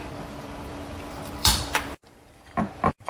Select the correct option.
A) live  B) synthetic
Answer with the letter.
B